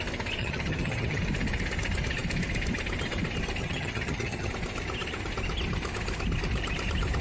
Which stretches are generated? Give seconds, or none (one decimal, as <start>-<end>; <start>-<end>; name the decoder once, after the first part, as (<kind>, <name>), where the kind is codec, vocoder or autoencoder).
0.4-1.2 (vocoder, HiFi-GAN); 3.6-4.5